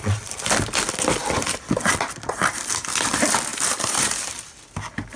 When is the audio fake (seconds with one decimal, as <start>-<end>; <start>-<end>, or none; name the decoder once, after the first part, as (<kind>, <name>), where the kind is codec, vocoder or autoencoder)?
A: 1.2-2.8 (vocoder, BigVGAN v2); 3.5-4.3